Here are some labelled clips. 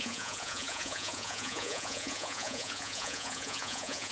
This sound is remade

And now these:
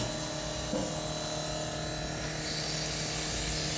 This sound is recorded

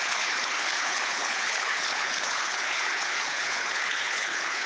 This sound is remade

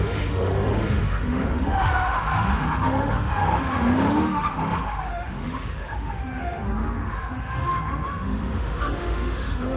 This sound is remade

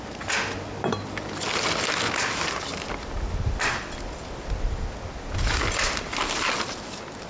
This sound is recorded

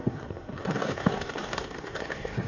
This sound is remade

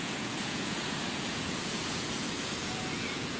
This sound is remade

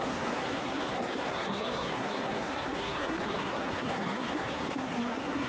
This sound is remade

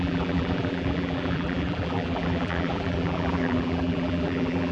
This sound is remade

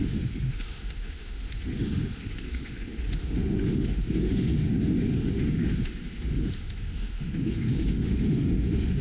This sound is remade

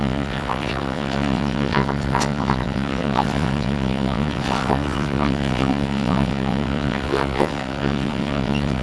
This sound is remade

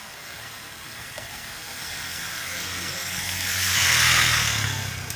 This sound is remade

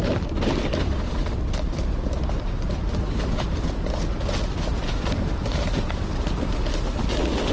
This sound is recorded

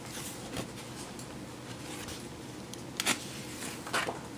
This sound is recorded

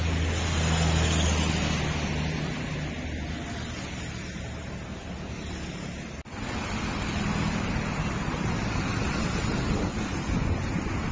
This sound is recorded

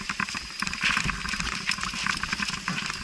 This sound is recorded